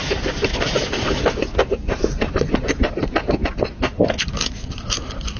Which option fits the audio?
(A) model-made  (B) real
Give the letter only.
B